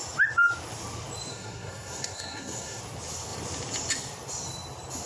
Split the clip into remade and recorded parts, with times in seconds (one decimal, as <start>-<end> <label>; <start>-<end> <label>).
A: 0.0-1.3 recorded; 1.3-2.8 remade; 2.8-5.1 recorded